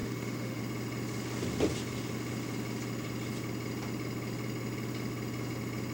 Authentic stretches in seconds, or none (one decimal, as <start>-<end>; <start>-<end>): 0.6-5.9